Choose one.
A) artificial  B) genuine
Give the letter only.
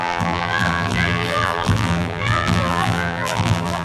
A